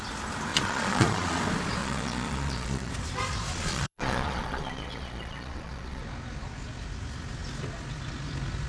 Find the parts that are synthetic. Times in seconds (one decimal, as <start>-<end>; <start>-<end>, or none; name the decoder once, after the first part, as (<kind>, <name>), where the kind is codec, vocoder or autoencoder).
0.5-1.4 (vocoder, Vocos); 1.8-2.9; 3.5-6.0